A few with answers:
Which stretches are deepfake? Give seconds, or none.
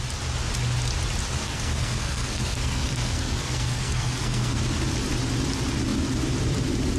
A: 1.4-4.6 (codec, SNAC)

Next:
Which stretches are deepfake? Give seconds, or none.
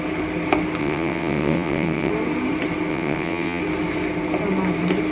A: 0.8-2.1 (vocoder, WaveNeXt); 2.9-3.6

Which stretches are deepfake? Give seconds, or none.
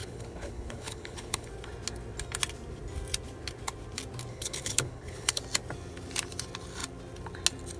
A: 0.0-1.5 (codec, HILCodec); 4.3-5.4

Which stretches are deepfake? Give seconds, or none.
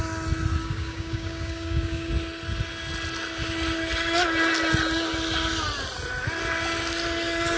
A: 0.6-2.1 (codec, DAC)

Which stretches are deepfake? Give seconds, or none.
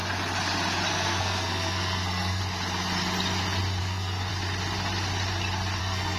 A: 0.9-2.4 (codec, SNAC); 3.8-4.3; 5.8-6.2